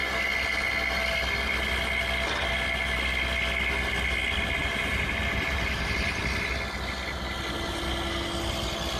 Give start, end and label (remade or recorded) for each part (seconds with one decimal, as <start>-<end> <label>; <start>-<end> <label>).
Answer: 0.0-4.6 recorded; 4.6-6.2 remade; 6.2-9.0 recorded